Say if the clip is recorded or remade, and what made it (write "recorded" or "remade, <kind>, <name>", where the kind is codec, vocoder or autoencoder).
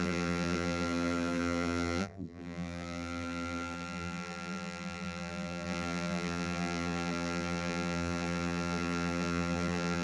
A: remade, vocoder, BigVGAN v2